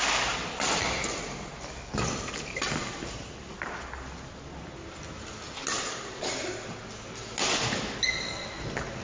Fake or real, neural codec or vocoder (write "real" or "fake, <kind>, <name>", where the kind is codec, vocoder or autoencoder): real